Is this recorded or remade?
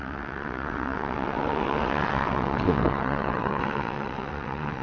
remade